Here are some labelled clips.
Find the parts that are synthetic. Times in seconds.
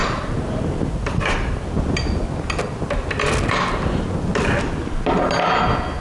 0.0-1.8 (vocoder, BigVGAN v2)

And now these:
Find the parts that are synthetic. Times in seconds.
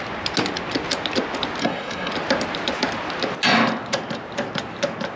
1.6-2.1 (codec, SNAC)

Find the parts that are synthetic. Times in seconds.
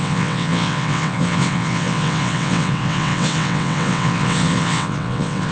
0.0-5.5 (vocoder, WaveNeXt)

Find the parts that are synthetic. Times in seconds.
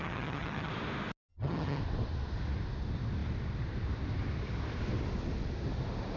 0.0-0.7 (vocoder, HiFi-GAN); 1.3-1.8